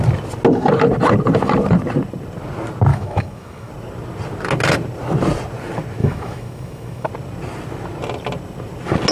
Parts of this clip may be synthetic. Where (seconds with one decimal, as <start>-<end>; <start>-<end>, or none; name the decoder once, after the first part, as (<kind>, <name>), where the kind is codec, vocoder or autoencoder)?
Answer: 2.9-3.7 (autoencoder, DAC-VAE); 6.0-7.1